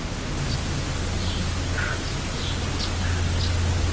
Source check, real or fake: real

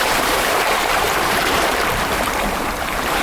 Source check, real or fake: fake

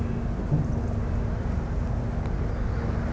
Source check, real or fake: real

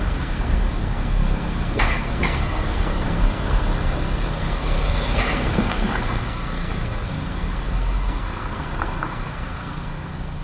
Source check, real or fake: fake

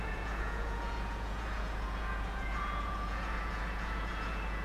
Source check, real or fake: fake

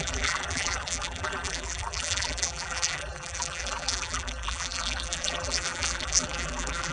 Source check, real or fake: fake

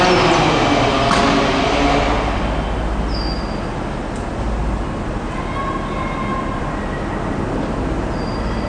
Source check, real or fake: real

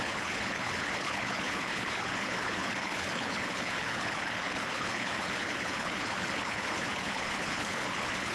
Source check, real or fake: fake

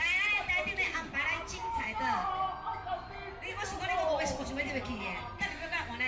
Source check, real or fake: real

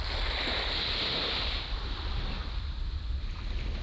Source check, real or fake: real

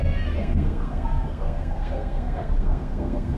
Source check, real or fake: fake